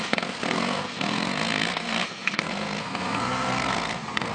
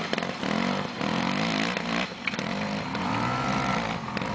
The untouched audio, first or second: second